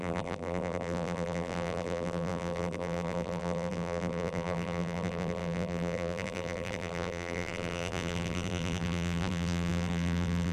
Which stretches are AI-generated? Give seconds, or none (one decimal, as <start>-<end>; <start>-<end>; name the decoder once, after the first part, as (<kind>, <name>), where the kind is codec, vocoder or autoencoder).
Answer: 0.0-10.5 (vocoder, BigVGAN v2)